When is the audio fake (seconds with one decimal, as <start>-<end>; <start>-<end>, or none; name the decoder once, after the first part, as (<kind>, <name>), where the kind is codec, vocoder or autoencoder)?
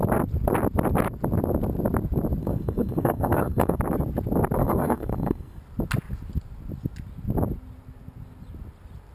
2.4-3.8 (codec, SNAC); 4.6-5.6